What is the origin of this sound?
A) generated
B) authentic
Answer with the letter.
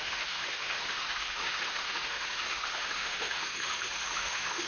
A